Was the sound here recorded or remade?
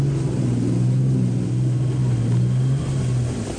recorded